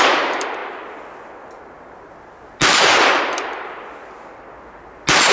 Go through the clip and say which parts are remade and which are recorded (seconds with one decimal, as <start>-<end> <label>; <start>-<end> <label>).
0.0-5.3 recorded